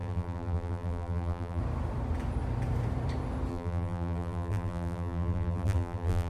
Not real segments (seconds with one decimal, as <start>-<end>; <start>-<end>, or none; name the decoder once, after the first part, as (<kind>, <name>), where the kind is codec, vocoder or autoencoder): 0.0-1.6 (vocoder, BigVGAN v2); 3.5-6.3